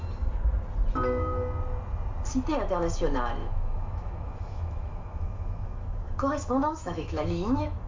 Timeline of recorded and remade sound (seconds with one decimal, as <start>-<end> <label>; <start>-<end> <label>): 0.0-3.4 recorded; 3.4-7.9 remade